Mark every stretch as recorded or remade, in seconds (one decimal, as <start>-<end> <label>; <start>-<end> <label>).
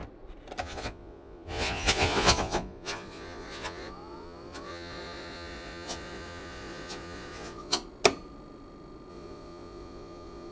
0.0-0.6 recorded; 0.6-7.8 remade; 7.8-9.1 recorded; 9.1-10.5 remade